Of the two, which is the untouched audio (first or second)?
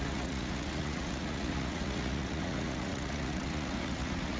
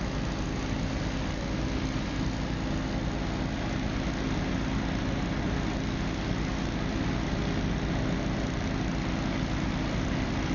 second